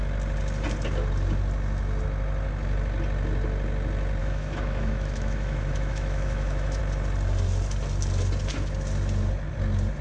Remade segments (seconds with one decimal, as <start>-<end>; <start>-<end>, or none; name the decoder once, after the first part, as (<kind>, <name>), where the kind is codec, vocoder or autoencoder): 4.2-6.8 (autoencoder, DAC-VAE)